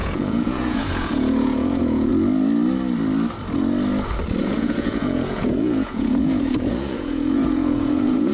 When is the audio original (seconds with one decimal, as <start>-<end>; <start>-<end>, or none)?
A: 2.1-4.4